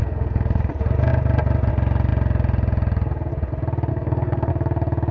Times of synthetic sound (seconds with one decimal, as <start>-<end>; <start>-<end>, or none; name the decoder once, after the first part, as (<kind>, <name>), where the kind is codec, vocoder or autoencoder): 0.0-0.6 (codec, SNAC); 3.9-4.5